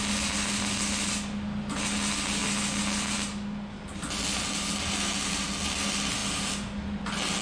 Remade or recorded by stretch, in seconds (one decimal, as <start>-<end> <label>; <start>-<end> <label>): 0.0-7.4 recorded